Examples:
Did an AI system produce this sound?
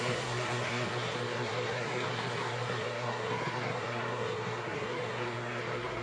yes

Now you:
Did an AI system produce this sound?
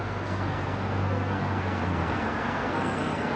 yes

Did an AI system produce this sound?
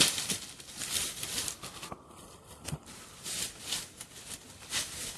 no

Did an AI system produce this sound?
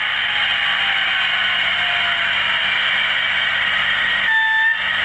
no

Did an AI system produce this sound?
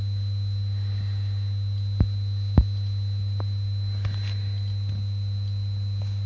no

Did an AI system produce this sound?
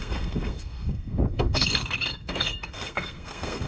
yes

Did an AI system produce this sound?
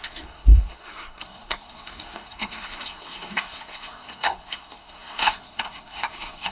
yes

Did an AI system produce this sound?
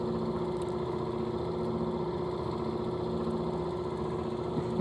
no